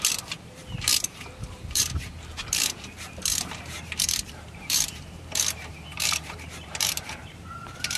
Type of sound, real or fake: fake